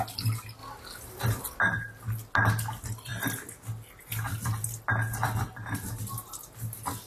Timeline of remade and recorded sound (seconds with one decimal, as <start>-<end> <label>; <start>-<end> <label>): 0.0-7.1 recorded

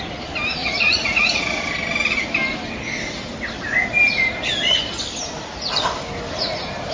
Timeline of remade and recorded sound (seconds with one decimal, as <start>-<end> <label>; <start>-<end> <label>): 0.0-0.6 recorded; 0.6-1.6 remade; 1.6-6.9 recorded

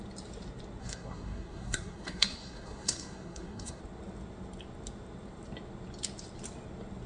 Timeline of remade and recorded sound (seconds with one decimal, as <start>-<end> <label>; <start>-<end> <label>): 0.0-0.8 recorded; 0.8-3.8 remade; 3.8-7.1 recorded